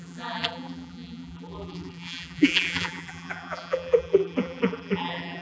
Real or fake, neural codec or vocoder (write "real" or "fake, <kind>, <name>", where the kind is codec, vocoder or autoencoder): fake, vocoder, BigVGAN v2